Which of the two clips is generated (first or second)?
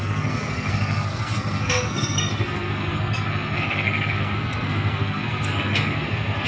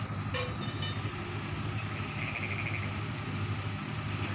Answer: first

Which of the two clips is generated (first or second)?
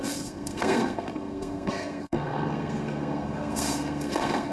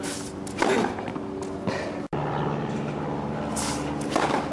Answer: first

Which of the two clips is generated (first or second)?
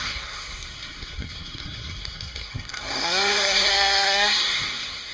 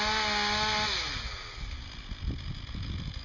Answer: first